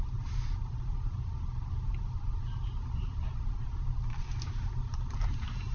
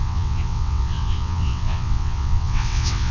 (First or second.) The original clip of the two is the first